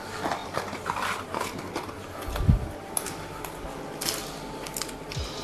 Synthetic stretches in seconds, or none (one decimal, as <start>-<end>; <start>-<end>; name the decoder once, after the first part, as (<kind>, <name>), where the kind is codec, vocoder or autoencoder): none